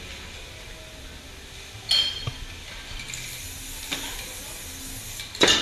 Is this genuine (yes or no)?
yes